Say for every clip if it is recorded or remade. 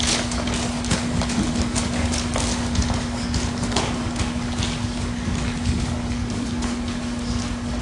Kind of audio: remade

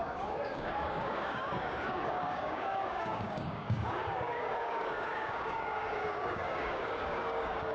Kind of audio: remade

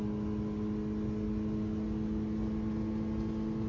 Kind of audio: recorded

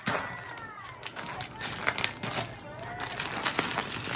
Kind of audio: recorded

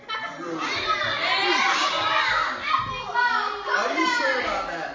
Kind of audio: recorded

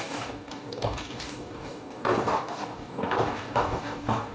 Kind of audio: remade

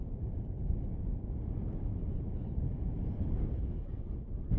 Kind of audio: recorded